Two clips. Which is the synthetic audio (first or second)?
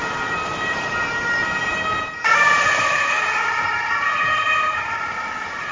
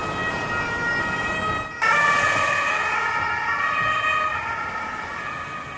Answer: first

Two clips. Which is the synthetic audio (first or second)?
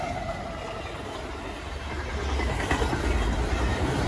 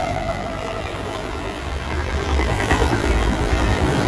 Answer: second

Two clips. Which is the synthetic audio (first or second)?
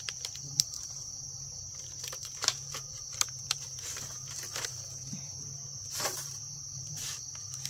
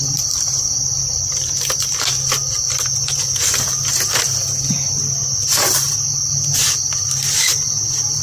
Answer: first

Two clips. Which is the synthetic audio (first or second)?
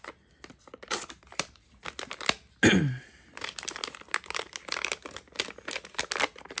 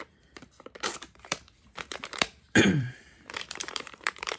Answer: second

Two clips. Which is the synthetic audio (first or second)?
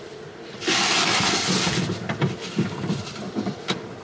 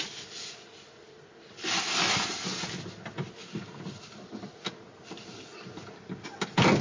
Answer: first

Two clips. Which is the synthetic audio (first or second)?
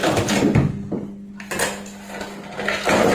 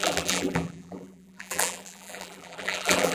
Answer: second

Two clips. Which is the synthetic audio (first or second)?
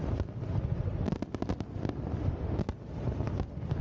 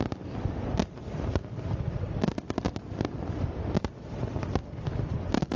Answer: second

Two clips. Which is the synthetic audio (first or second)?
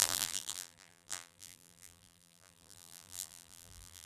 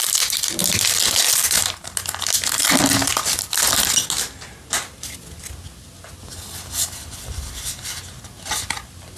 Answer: first